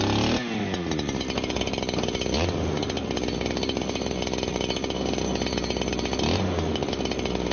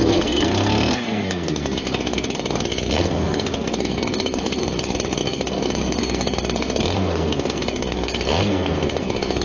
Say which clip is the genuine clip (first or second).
first